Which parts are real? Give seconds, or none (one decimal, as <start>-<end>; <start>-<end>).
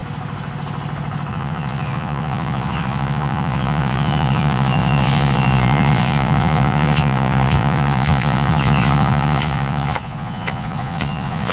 0.0-1.3